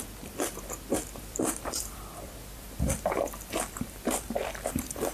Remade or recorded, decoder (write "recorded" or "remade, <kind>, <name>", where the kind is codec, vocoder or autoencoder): remade, vocoder, BigVGAN v2